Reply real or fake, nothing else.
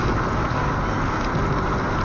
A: real